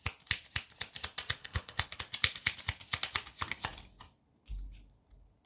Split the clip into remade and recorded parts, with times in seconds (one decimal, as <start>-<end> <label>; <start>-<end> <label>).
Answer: 0.0-1.4 recorded; 1.4-2.0 remade; 2.0-5.5 recorded